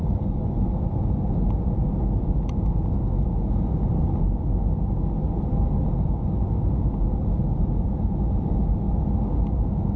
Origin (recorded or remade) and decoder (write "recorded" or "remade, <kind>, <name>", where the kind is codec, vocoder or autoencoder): recorded